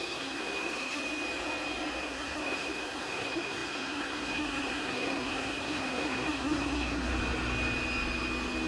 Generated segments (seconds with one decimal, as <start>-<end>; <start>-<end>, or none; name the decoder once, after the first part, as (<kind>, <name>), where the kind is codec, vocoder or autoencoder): 0.0-1.0 (codec, SNAC); 2.0-7.1